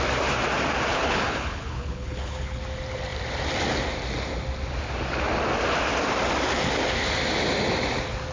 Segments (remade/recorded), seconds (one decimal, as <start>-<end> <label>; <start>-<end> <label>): 0.0-0.9 recorded; 0.9-2.6 remade; 2.6-8.3 recorded